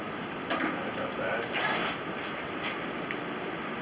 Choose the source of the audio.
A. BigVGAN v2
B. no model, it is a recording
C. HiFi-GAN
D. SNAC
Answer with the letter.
B